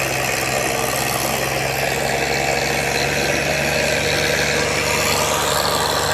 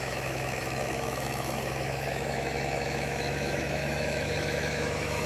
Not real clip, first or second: second